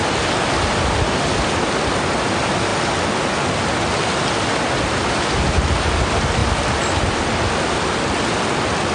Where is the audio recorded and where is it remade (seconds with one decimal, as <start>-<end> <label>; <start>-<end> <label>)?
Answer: 0.0-8.9 recorded